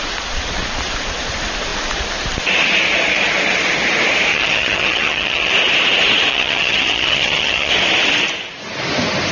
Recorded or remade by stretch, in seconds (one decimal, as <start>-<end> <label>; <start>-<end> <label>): 0.0-4.3 recorded; 4.3-5.5 remade; 5.5-6.3 recorded; 6.3-7.7 remade; 7.7-9.3 recorded